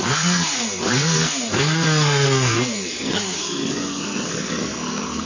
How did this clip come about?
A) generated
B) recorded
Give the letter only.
A